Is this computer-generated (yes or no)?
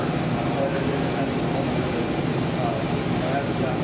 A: no